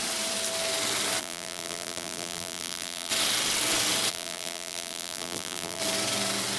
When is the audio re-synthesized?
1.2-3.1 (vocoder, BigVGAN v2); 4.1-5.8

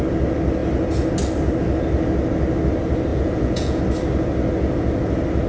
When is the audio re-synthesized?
3.1-3.8 (vocoder, Vocos)

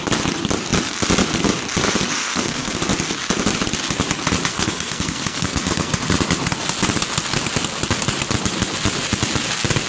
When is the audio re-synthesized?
2.2-2.8 (codec, SNAC); 4.5-6.0

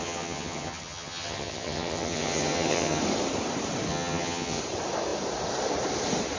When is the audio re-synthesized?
0.0-3.0 (vocoder, HiFi-GAN); 3.9-4.6